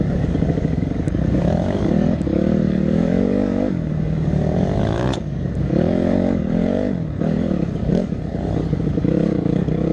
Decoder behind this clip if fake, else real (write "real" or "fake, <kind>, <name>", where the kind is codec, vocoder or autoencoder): fake, codec, DAC